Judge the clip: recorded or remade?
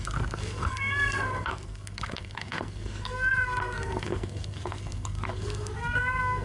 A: remade